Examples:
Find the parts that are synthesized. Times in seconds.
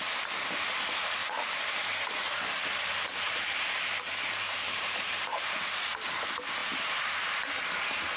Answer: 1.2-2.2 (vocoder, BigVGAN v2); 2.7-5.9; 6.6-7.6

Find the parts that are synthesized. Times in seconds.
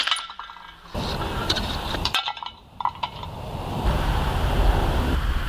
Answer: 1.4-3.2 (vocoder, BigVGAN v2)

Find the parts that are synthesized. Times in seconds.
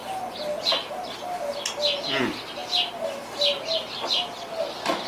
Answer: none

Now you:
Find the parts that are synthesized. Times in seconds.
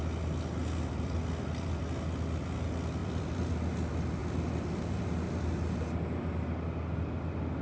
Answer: 0.6-1.8 (vocoder, BigVGAN v2); 3.0-3.5; 4.2-5.4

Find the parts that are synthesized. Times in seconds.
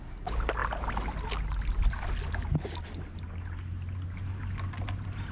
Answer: none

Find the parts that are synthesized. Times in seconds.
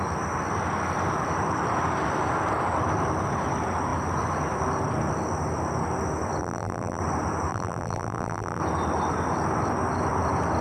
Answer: 6.4-7.0 (vocoder, BigVGAN v2); 7.5-8.6